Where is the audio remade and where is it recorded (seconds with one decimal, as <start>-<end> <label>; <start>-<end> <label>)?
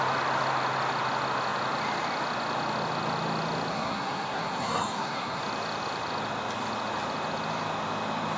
0.0-3.7 recorded; 3.7-5.4 remade; 5.4-8.4 recorded